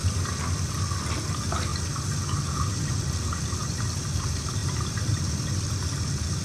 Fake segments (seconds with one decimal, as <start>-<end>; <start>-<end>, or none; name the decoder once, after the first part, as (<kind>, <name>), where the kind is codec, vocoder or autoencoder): 4.6-5.2 (vocoder, BigVGAN v2)